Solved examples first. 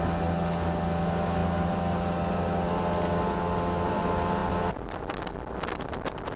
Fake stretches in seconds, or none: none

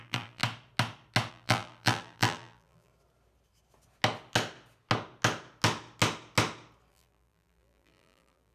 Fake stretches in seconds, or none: 0.0-0.4 (vocoder, BigVGAN v2); 1.3-2.9; 6.9-8.5